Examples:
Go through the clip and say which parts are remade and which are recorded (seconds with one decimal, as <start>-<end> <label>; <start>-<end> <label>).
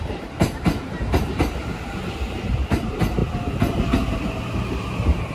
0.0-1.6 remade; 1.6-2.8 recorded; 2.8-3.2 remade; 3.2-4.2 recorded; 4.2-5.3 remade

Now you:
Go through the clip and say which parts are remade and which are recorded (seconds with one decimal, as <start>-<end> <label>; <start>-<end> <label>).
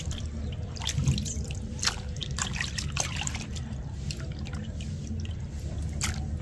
0.0-6.4 recorded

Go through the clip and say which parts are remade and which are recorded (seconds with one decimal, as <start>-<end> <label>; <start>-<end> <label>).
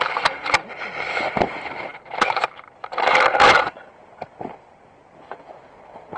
0.0-6.2 recorded